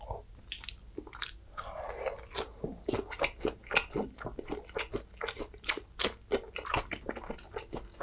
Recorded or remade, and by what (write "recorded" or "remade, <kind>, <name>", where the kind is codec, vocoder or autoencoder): recorded